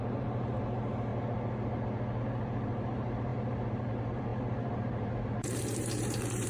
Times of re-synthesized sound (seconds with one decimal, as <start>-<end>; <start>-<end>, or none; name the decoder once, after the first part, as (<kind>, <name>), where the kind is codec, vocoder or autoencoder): 0.0-1.1 (vocoder, BigVGAN v2); 2.2-6.5